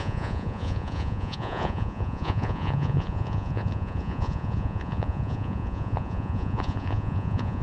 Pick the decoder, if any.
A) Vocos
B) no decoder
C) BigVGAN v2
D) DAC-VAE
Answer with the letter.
A